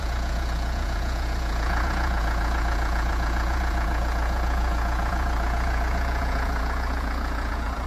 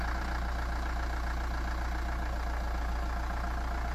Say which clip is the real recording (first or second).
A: second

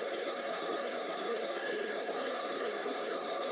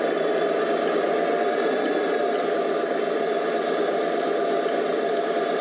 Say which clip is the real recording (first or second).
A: second